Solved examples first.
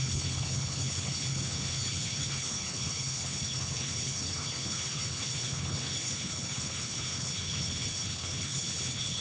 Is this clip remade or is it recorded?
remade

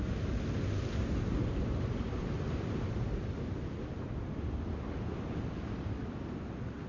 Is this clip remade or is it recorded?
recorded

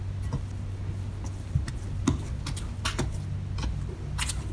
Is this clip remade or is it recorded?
recorded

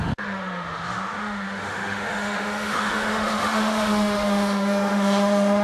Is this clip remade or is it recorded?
remade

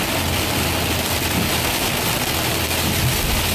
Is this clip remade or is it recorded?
recorded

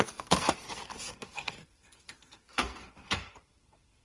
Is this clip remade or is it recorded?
remade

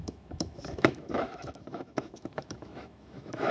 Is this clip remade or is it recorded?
remade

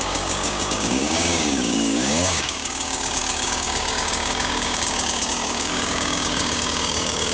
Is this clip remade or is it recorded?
remade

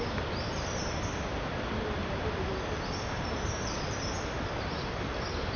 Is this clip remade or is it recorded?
recorded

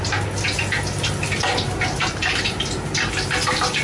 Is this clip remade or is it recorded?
recorded